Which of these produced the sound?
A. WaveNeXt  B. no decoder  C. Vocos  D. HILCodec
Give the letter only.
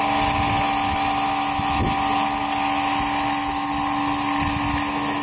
B